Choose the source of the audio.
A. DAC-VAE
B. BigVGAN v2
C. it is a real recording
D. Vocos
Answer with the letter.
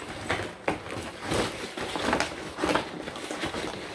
C